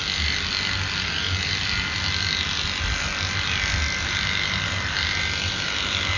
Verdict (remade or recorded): recorded